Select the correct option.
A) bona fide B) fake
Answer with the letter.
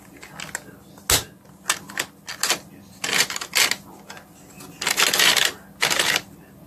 A